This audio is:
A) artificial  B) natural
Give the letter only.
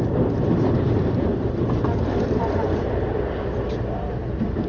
B